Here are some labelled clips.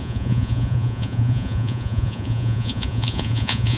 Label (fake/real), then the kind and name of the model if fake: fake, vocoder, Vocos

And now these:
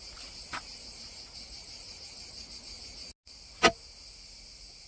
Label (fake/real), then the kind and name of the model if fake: real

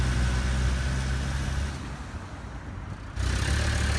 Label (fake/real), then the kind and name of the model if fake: real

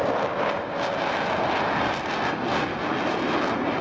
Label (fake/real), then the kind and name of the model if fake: real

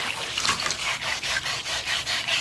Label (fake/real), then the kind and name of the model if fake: fake, codec, DAC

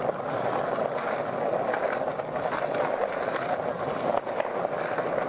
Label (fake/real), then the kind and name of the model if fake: real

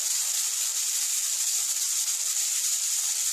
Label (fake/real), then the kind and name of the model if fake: real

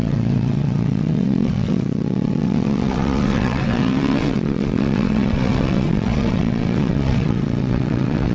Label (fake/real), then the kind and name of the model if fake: fake, vocoder, WaveNeXt